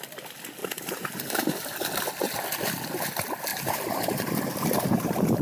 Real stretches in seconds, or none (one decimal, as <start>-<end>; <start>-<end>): 0.0-0.6; 1.8-3.5